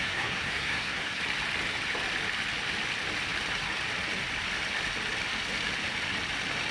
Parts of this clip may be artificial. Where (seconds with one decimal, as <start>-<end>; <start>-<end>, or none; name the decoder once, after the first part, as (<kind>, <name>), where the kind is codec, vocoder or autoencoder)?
0.0-1.2 (codec, SNAC)